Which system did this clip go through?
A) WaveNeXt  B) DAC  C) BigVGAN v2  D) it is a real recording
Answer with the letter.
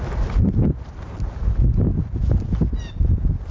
D